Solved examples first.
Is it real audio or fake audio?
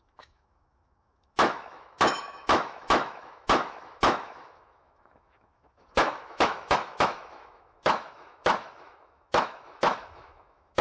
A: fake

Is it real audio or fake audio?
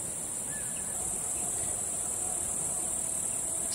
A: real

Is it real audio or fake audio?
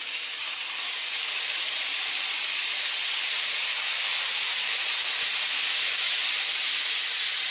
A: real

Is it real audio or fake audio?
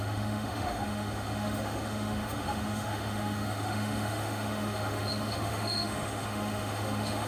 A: fake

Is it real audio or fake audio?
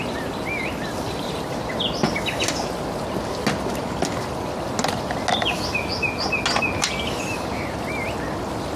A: real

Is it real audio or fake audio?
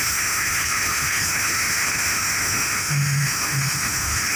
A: fake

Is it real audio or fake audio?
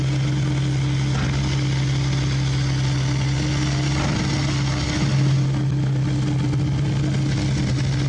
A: real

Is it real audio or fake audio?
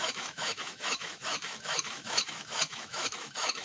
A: fake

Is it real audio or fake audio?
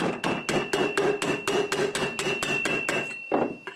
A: real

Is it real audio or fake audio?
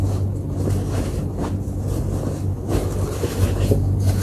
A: real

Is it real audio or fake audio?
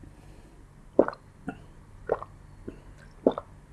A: real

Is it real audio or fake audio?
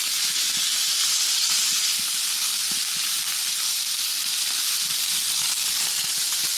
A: real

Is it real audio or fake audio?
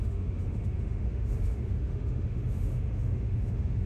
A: fake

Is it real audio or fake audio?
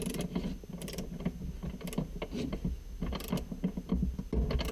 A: real